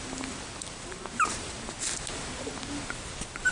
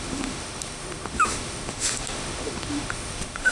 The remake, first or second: second